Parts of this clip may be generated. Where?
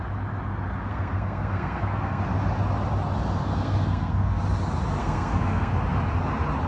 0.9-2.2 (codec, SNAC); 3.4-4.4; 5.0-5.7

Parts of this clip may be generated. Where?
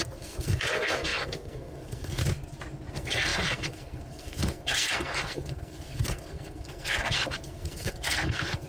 0.0-2.2 (codec, SNAC); 2.9-8.7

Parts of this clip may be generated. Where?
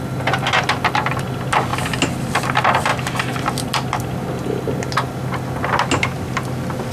none